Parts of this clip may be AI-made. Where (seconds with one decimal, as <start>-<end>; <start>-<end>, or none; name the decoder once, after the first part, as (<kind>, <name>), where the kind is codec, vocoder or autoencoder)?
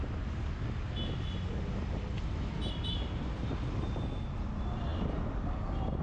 none